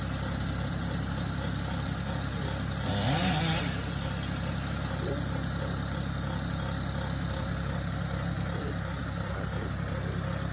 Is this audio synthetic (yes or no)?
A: no